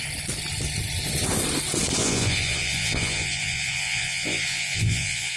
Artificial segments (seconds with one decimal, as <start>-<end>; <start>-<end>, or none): 2.0-5.4